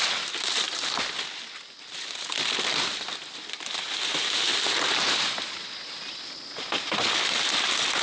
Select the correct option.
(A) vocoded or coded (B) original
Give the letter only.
B